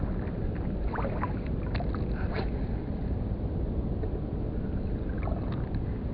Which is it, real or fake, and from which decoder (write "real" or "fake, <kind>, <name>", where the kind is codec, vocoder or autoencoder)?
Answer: real